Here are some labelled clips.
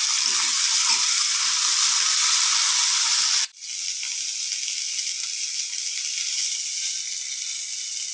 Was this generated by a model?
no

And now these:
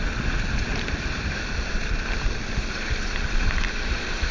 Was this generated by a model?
no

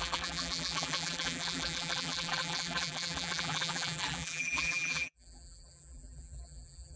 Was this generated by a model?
yes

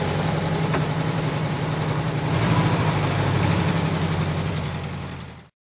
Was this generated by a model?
yes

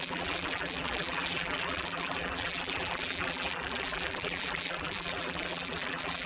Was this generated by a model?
yes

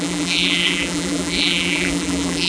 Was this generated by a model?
yes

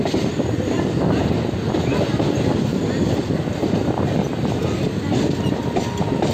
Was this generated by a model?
no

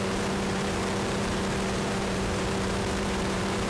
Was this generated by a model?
yes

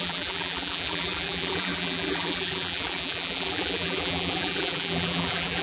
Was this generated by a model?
yes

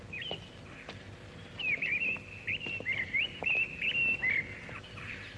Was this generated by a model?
yes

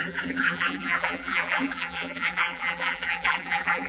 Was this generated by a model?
yes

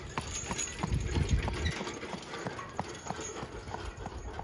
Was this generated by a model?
no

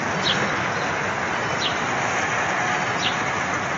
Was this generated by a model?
no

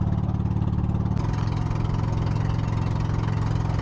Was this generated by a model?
no